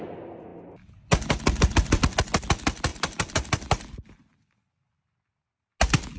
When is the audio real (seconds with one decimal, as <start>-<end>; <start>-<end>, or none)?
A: 0.0-6.2